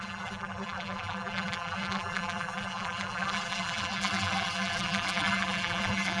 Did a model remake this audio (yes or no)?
yes